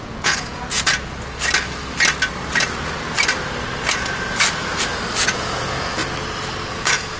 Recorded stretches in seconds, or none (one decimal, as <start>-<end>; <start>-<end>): 0.9-5.2; 6.0-6.7